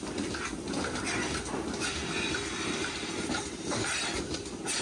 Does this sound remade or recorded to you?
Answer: recorded